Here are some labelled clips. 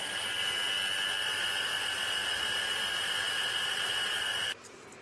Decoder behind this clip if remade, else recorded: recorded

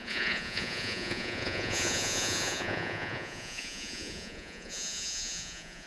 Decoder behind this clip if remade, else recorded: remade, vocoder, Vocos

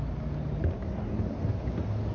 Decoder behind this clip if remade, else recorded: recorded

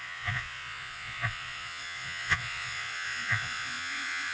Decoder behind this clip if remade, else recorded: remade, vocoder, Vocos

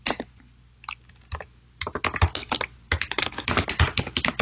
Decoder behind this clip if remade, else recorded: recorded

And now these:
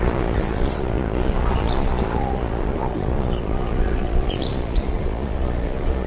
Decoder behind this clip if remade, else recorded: remade, vocoder, Vocos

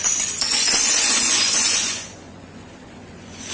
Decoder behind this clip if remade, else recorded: remade, vocoder, Vocos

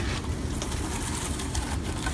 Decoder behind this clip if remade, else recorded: recorded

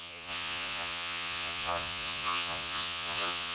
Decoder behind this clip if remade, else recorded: remade, vocoder, Vocos